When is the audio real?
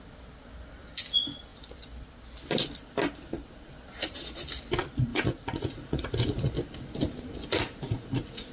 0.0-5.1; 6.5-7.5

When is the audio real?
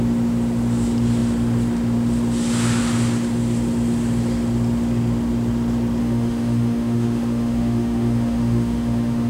0.0-6.0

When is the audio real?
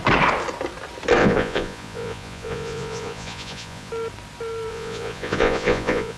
0.0-1.2; 3.9-4.7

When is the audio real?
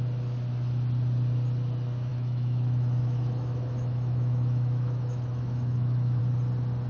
0.0-2.1; 6.2-6.9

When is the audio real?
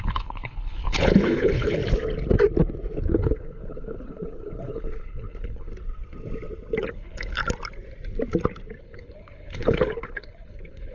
1.8-3.0; 5.7-6.8; 7.4-8.8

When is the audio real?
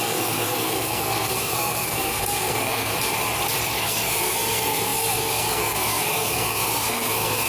2.9-3.6